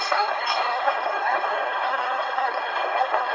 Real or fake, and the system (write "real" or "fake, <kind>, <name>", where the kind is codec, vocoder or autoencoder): fake, codec, SNAC